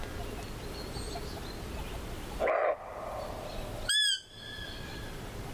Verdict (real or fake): real